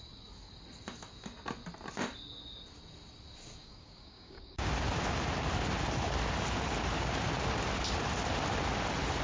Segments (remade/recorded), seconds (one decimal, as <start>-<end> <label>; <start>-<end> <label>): 0.0-3.6 recorded; 3.6-4.7 remade; 4.7-9.2 recorded